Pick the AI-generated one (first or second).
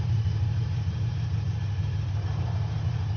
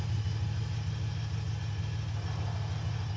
first